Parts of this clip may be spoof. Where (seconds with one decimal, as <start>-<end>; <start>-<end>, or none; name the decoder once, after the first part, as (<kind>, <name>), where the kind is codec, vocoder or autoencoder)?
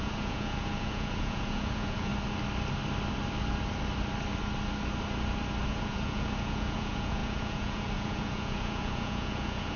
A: 0.0-2.1 (vocoder, Vocos); 5.7-9.8